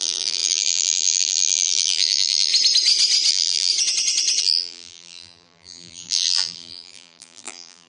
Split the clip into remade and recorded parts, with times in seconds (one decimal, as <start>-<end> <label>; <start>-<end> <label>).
0.0-2.5 remade; 2.5-3.3 recorded; 3.3-3.7 remade; 3.7-4.4 recorded; 4.4-7.9 remade